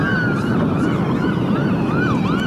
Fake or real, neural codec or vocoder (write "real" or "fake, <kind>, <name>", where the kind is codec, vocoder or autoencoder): real